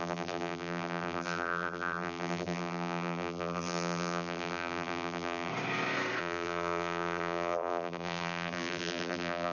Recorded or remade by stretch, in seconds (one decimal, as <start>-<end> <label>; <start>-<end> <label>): 0.0-5.5 remade; 5.5-6.2 recorded; 6.2-9.5 remade